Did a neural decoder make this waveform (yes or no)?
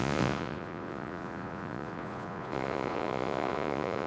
yes